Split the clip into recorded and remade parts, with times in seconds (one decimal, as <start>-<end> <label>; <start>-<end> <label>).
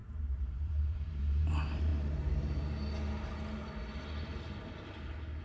0.0-1.9 remade; 1.9-5.4 recorded